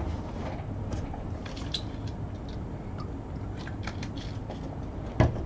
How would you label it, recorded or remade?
recorded